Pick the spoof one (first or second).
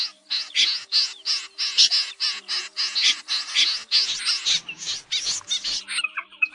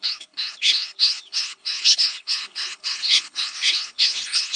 second